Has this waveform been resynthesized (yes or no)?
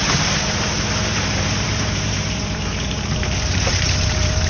yes